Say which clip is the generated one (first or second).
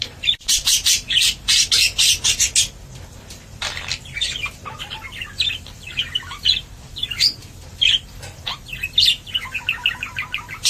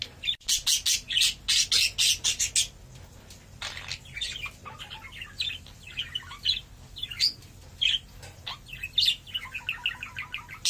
first